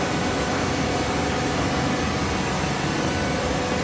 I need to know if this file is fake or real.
real